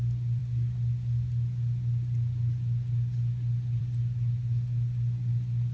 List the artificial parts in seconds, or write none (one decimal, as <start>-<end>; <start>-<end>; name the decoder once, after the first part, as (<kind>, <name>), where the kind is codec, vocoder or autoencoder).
none